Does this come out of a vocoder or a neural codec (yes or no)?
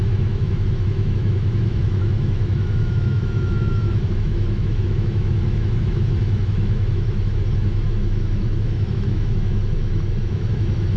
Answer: yes